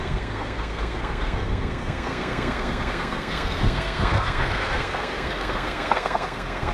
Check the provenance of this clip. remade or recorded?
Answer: remade